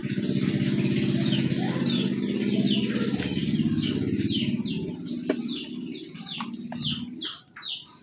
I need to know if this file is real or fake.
real